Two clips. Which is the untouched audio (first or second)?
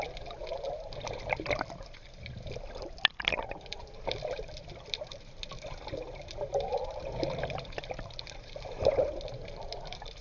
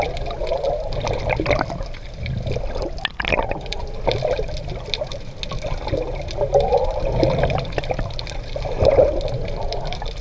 second